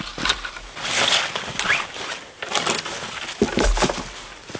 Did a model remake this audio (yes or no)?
no